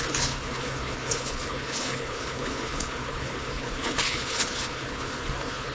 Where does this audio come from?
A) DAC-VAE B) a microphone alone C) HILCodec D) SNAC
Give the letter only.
C